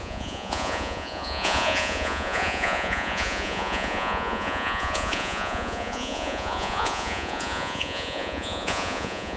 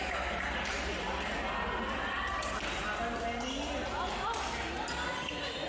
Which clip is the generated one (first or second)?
first